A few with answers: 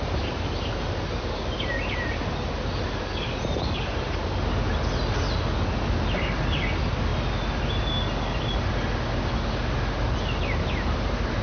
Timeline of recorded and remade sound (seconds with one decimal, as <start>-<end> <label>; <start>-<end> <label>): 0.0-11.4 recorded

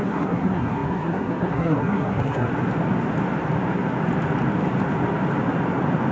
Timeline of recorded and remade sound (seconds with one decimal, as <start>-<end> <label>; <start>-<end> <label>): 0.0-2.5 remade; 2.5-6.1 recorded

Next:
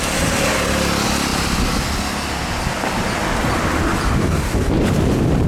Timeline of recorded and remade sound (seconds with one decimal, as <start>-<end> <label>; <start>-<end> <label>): 0.0-4.2 recorded; 4.2-4.7 remade; 4.7-5.5 recorded